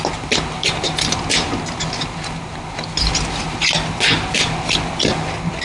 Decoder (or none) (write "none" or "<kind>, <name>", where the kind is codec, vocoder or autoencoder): none